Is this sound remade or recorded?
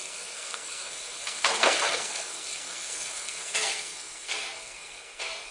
remade